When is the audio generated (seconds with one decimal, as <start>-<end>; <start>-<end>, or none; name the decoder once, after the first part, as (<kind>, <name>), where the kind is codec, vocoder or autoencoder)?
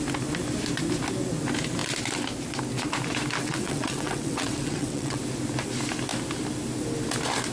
3.4-5.2 (vocoder, WaveNeXt)